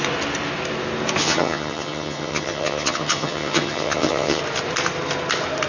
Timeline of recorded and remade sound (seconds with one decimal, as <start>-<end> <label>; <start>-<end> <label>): 0.0-1.2 recorded; 1.2-4.4 remade; 4.4-5.7 recorded